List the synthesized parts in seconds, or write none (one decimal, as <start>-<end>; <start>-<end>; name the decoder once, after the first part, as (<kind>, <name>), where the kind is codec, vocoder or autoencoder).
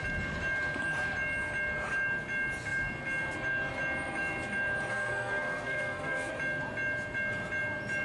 4.9-6.3 (codec, SNAC)